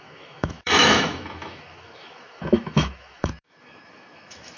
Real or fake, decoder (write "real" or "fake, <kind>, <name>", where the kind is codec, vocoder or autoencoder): fake, autoencoder, DAC-VAE